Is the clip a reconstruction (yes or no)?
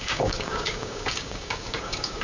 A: yes